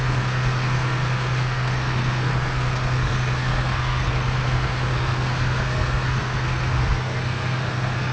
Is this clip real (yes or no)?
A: no